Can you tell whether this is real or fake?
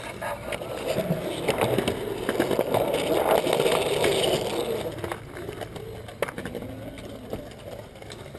real